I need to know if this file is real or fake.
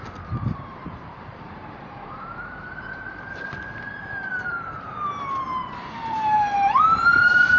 fake